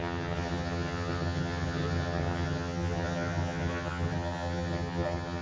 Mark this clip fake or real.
fake